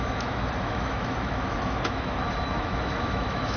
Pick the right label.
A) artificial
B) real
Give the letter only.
A